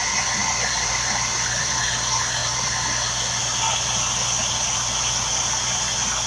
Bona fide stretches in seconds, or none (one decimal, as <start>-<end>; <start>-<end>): 0.0-0.4; 1.8-6.3